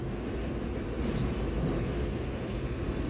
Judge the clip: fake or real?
real